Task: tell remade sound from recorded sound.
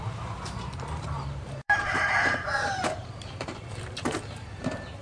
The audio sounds remade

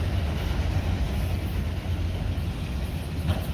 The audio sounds recorded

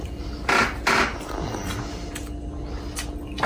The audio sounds recorded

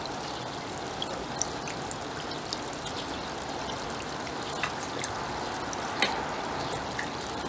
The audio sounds recorded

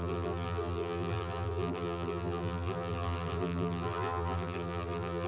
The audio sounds remade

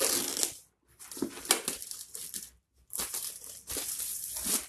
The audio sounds recorded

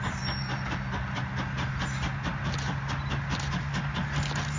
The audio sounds recorded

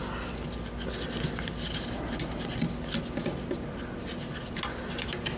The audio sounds recorded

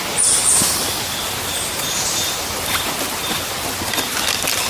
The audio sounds recorded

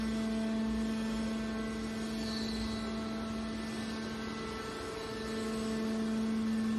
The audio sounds recorded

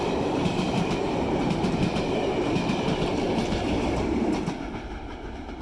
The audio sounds remade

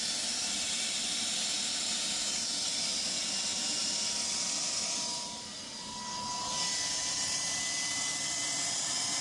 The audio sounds recorded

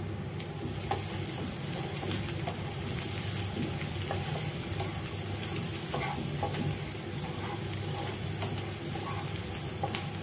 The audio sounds recorded